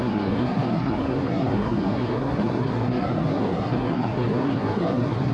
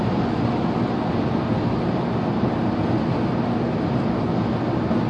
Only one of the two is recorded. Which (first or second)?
second